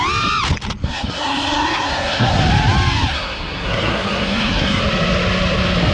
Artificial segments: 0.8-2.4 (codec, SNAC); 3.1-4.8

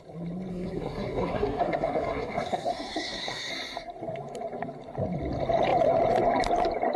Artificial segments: 0.5-3.5 (codec, SNAC)

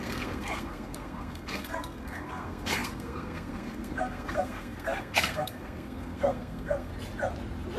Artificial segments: 0.0-6.9 (codec, SNAC)

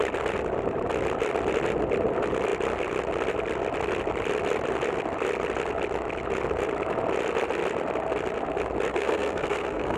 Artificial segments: 8.9-10.0 (codec, SNAC)

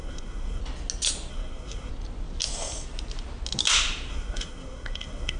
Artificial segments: 0.0-0.6 (codec, SNAC); 1.3-1.9; 4.1-5.4